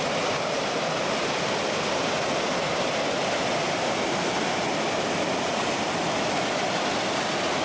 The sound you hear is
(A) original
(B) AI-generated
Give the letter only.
A